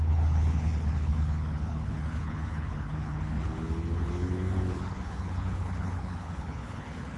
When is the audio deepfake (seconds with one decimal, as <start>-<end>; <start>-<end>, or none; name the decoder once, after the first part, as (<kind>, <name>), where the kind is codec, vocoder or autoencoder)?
0.0-7.2 (codec, HILCodec)